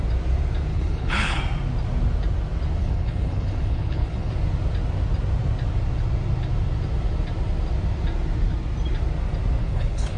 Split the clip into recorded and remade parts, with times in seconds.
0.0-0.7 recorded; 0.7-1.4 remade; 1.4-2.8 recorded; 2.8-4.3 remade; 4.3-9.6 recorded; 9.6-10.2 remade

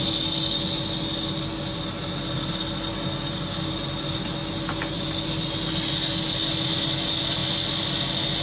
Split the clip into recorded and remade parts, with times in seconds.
0.0-2.9 recorded; 2.9-3.7 remade; 3.7-8.4 recorded

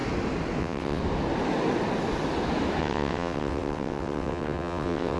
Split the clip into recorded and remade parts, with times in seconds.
0.0-0.6 recorded; 0.6-1.0 remade; 1.0-2.8 recorded; 2.8-5.2 remade

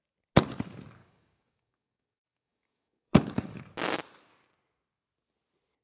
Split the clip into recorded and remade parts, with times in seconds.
0.0-1.0 recorded; 1.0-3.6 remade; 3.6-5.8 recorded

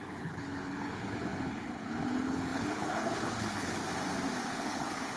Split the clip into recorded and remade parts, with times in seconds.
0.0-3.8 remade; 3.8-4.4 recorded; 4.4-5.2 remade

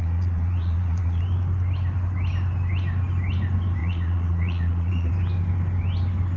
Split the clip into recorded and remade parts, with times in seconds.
0.0-1.2 remade; 1.2-3.8 recorded; 3.8-5.1 remade; 5.1-6.4 recorded

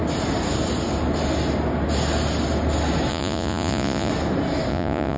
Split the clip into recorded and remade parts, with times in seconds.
0.0-3.1 recorded; 3.1-4.1 remade; 4.1-4.7 recorded; 4.7-5.2 remade

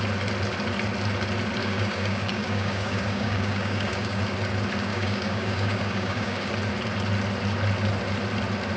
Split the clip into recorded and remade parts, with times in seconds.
0.0-1.6 recorded; 1.6-4.2 remade; 4.2-4.9 recorded; 4.9-6.5 remade; 6.5-8.8 recorded